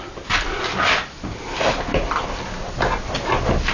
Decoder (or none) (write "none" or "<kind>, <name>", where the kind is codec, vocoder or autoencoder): none